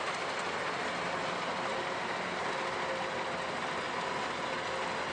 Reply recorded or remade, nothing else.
recorded